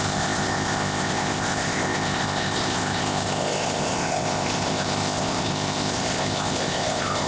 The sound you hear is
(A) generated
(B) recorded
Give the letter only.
A